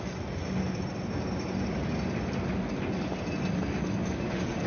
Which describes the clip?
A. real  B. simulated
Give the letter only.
A